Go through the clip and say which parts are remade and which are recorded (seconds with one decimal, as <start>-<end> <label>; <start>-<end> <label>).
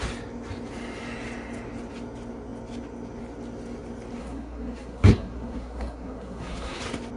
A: 0.0-4.2 recorded; 4.2-6.8 remade; 6.8-7.2 recorded